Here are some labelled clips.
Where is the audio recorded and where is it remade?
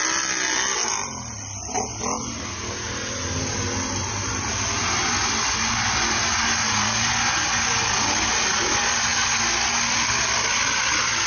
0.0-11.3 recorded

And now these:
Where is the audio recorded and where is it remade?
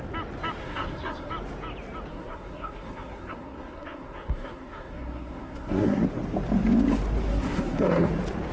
0.0-0.6 recorded; 0.6-1.3 remade; 1.3-2.1 recorded; 2.1-6.0 remade; 6.0-7.3 recorded; 7.3-8.1 remade; 8.1-8.5 recorded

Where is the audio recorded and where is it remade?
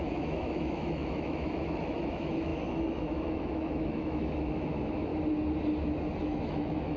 0.0-5.1 remade; 5.1-6.2 recorded; 6.2-7.0 remade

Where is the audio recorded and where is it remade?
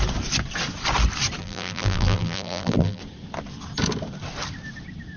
0.0-1.4 recorded; 1.4-3.0 remade; 3.0-5.2 recorded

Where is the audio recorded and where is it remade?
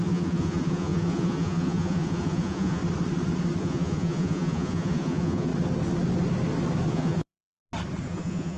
0.0-2.8 remade; 2.8-3.6 recorded; 3.6-5.5 remade; 5.5-6.9 recorded; 6.9-7.6 remade; 7.6-8.1 recorded; 8.1-8.6 remade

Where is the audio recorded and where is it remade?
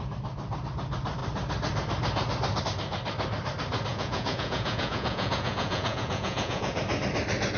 0.0-3.9 recorded; 3.9-6.8 remade; 6.8-7.6 recorded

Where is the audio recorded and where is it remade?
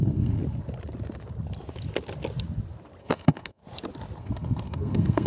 0.0-0.4 remade; 0.4-3.0 recorded; 3.0-3.6 remade; 3.6-4.2 recorded; 4.2-5.3 remade